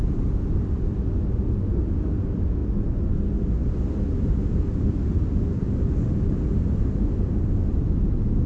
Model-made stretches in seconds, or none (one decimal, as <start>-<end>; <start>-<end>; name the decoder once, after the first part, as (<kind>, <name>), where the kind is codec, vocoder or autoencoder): none